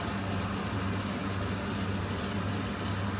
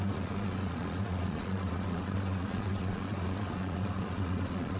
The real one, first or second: first